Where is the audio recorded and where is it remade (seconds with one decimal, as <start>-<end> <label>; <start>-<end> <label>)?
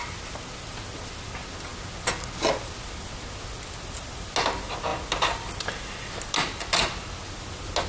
0.0-7.9 recorded